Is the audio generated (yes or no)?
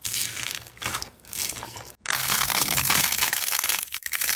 yes